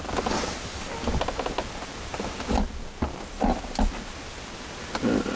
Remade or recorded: recorded